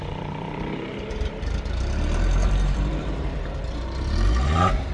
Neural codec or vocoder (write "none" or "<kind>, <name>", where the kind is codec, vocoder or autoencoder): vocoder, BigVGAN v2